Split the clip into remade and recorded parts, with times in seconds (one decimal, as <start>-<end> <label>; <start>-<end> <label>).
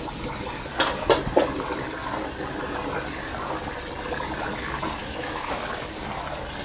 0.0-5.0 recorded; 5.0-5.6 remade; 5.6-6.6 recorded